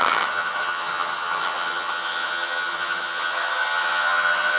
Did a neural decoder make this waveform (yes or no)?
yes